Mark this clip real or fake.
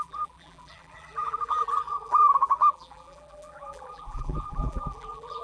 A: fake